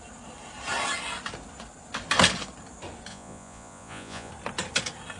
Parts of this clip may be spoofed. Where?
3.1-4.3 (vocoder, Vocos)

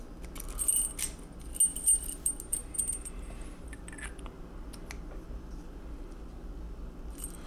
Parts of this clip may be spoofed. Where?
2.5-3.8 (vocoder, BigVGAN v2)